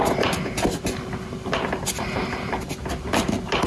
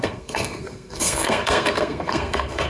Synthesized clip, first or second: second